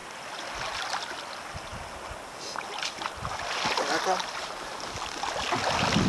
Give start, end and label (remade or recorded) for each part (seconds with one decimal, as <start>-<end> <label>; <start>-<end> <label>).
0.0-6.1 recorded